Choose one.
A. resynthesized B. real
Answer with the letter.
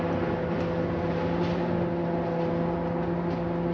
B